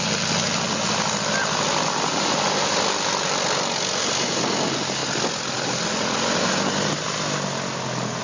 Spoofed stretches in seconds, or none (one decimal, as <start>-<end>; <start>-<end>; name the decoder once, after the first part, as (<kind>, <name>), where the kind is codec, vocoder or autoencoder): none